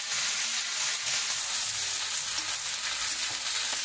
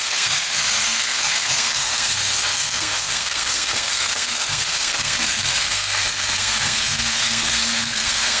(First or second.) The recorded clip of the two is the first